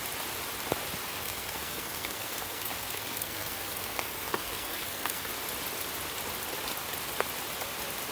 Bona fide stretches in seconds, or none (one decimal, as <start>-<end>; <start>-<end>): 0.0-1.1; 5.3-8.1